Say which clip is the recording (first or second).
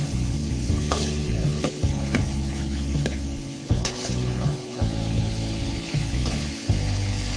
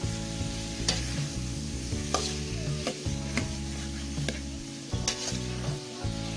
second